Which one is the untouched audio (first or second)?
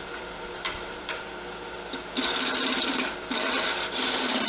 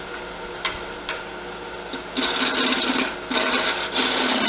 second